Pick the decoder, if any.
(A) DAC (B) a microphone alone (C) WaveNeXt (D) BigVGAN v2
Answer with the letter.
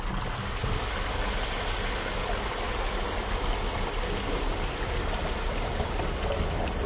B